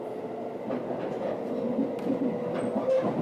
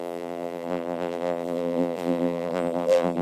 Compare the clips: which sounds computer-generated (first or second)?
second